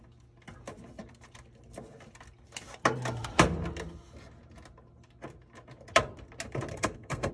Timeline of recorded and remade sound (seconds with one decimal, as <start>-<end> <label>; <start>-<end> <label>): 0.0-6.7 recorded; 6.7-7.3 remade